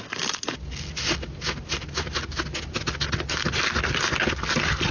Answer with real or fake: real